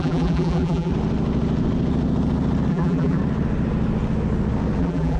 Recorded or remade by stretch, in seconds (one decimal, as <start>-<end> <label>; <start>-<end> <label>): 0.0-0.9 remade; 0.9-2.7 recorded; 2.7-3.2 remade; 3.2-4.8 recorded; 4.8-5.2 remade

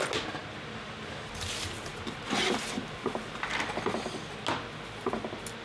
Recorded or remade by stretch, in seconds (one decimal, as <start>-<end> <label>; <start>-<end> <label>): 0.0-5.6 recorded